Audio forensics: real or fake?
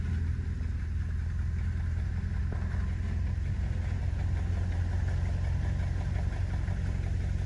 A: real